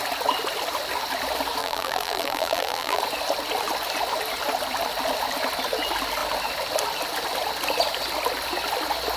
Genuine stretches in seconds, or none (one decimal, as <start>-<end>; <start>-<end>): 0.0-1.6; 3.0-9.2